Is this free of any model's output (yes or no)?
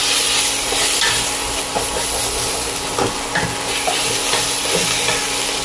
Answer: yes